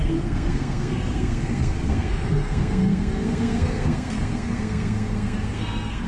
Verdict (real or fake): fake